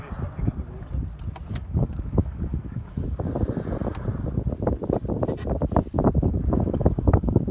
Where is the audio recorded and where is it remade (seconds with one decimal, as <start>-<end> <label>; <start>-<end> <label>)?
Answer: 0.0-1.6 recorded; 1.6-3.3 remade; 3.3-6.3 recorded; 6.3-7.5 remade